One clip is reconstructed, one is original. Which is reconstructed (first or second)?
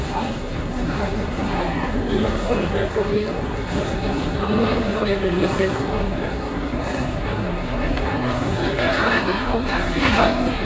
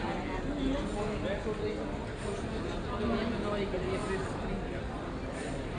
first